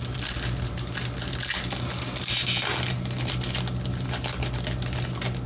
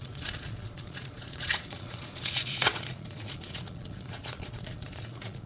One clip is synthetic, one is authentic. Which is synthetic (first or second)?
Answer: second